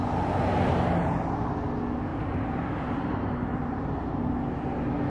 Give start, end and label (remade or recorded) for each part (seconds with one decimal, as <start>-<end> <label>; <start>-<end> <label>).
0.0-2.1 recorded; 2.1-4.2 remade; 4.2-5.1 recorded